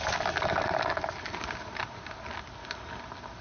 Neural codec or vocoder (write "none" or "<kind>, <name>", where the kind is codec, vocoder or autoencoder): none